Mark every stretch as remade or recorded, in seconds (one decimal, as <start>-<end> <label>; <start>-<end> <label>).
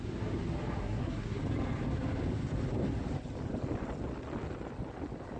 0.0-0.8 recorded; 0.8-1.4 remade; 1.4-5.4 recorded